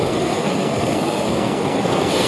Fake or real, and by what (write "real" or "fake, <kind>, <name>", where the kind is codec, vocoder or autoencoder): fake, codec, SNAC